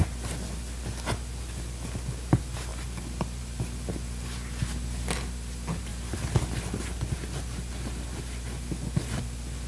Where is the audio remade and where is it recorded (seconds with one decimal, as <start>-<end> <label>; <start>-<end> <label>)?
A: 0.0-9.7 recorded